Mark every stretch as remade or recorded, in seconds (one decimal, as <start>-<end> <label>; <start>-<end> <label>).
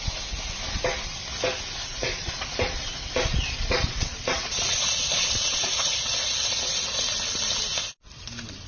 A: 0.0-1.8 recorded; 1.8-7.0 remade; 7.0-8.7 recorded